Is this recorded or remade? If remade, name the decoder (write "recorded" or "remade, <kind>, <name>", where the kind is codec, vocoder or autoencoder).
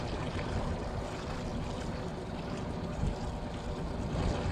recorded